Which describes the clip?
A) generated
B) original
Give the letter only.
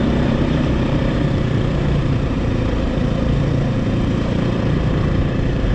A